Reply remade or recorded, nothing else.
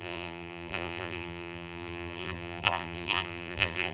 remade